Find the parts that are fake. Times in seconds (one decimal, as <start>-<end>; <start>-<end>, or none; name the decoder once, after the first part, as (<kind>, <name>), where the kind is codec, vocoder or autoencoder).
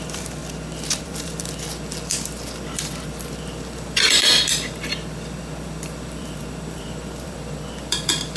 0.0-0.4 (vocoder, BigVGAN v2); 1.0-8.4